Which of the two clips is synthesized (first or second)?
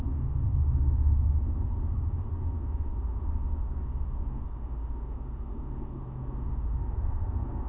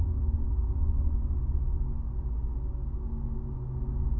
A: first